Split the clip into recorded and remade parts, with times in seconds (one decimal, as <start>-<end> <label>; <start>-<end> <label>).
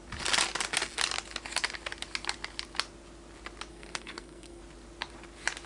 0.0-3.7 recorded; 3.7-4.6 remade; 4.6-5.7 recorded